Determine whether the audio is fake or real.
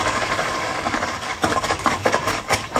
fake